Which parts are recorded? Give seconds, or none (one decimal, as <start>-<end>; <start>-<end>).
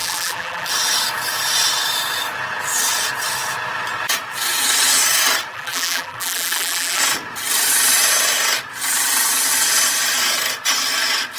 0.7-5.5; 7.0-11.4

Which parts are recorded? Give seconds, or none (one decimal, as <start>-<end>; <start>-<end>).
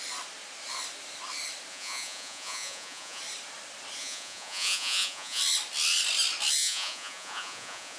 0.0-1.7; 3.2-4.0; 5.4-6.6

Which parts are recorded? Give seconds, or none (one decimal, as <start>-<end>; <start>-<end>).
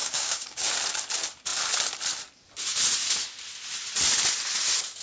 0.7-5.0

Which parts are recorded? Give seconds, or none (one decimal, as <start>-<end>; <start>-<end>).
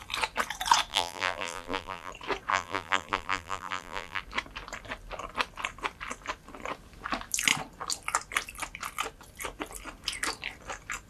0.0-0.9; 2.1-2.5; 4.2-11.1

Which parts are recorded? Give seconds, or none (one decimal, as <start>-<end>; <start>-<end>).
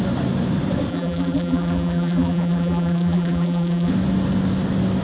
0.0-0.9; 3.9-5.0